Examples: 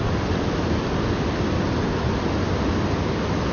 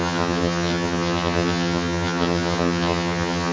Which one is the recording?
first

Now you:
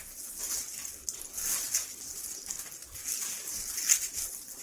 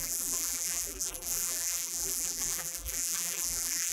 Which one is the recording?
first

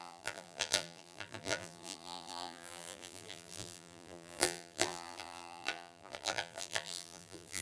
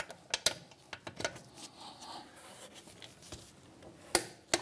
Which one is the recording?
second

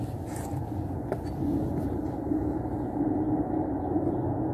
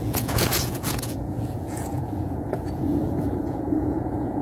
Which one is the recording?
first